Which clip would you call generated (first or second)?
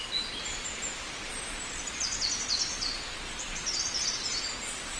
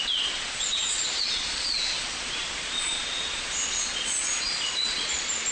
second